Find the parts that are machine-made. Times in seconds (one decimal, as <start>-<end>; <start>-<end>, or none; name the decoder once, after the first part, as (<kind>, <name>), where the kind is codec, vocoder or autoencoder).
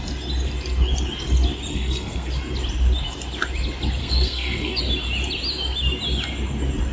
1.7-2.3 (codec, SNAC); 4.0-4.8